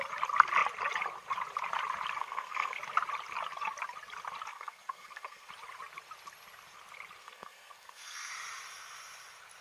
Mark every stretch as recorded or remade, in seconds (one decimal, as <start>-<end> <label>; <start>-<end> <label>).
0.0-2.2 recorded; 2.2-2.8 remade; 2.8-4.5 recorded; 4.5-5.5 remade; 5.5-7.2 recorded; 7.2-8.3 remade; 8.3-9.6 recorded